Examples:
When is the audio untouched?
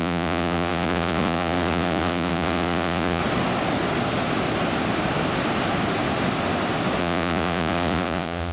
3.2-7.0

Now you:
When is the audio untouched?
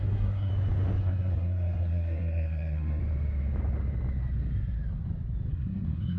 0.5-1.0; 3.0-5.5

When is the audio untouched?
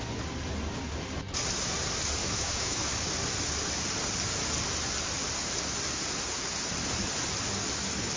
0.0-2.2; 2.9-8.2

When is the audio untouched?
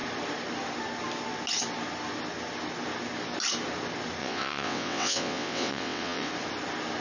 0.0-4.2; 6.3-7.0